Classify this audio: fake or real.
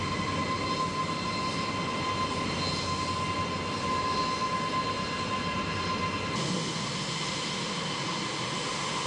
real